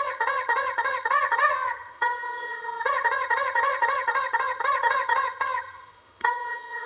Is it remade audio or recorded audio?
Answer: remade